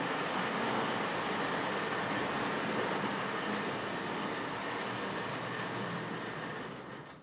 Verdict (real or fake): real